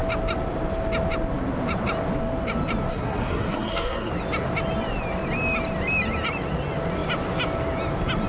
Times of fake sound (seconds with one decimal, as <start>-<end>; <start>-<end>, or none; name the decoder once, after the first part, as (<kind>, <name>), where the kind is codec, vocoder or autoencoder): 2.9-4.1 (codec, SNAC)